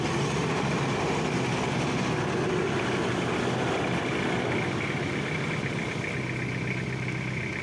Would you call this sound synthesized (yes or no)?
no